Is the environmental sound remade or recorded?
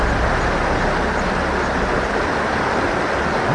recorded